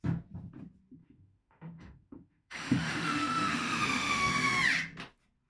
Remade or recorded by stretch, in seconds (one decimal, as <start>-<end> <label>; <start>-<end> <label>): 0.0-1.0 recorded; 1.0-4.3 remade; 4.3-5.5 recorded